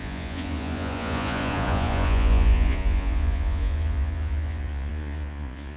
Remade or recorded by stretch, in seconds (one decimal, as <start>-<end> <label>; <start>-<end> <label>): 0.0-5.8 remade